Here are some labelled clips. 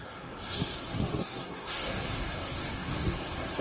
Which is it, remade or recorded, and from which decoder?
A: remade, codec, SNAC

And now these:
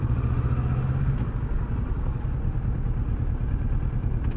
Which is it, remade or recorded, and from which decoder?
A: recorded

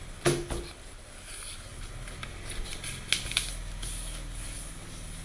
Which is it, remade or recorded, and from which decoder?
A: recorded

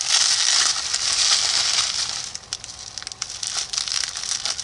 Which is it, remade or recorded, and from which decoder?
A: recorded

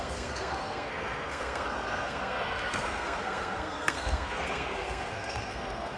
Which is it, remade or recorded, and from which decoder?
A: remade, codec, SNAC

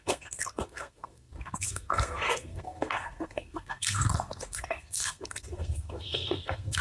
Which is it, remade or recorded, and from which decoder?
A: remade, codec, SNAC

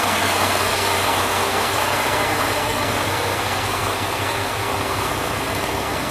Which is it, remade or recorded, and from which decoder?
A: remade, codec, SNAC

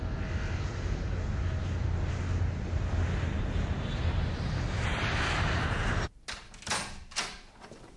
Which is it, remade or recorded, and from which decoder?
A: recorded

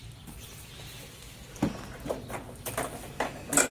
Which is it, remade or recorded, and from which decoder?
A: recorded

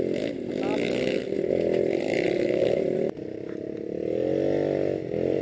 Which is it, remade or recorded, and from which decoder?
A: recorded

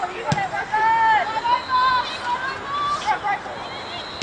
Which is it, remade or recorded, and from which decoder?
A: recorded